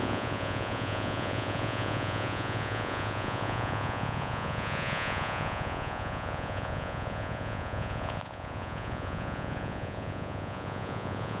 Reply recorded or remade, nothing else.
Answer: remade